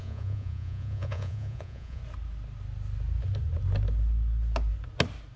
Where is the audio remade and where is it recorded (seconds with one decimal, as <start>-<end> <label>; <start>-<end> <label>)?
0.0-2.0 remade; 2.0-5.4 recorded